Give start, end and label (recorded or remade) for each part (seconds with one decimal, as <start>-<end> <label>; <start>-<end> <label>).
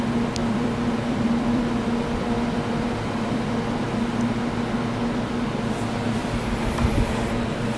0.0-0.4 recorded; 0.4-3.6 remade; 3.6-7.8 recorded